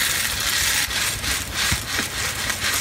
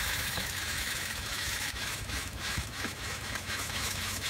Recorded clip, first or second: first